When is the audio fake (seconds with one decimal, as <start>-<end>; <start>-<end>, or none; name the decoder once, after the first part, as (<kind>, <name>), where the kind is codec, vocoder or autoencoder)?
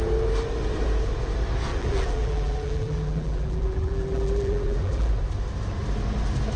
1.7-5.1 (vocoder, BigVGAN v2)